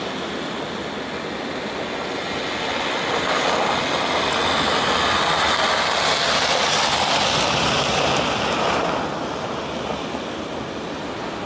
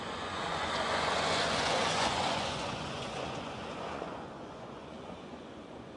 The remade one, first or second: second